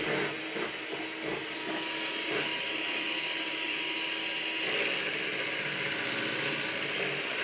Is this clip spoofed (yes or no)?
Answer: no